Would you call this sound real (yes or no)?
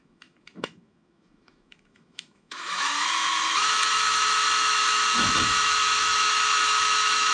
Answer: no